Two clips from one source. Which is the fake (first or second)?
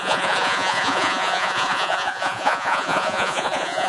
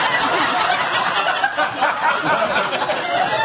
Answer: first